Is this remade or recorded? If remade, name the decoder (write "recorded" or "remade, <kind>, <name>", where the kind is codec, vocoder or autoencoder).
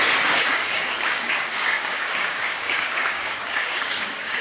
remade, codec, DAC